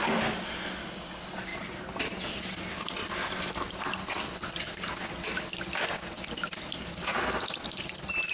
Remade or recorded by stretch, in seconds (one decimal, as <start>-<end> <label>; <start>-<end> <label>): 0.0-8.3 recorded